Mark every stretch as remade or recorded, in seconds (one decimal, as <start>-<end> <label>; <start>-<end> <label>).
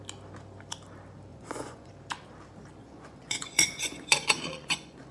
0.0-1.3 recorded; 1.3-1.9 remade; 1.9-2.8 recorded; 2.8-5.1 remade